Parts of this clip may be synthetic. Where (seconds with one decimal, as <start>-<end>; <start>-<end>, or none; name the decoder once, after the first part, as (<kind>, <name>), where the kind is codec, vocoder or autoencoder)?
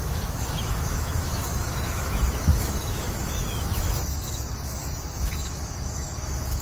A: 0.0-6.6 (autoencoder, DAC-VAE)